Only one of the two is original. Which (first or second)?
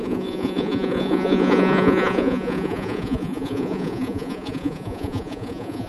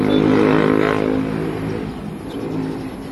second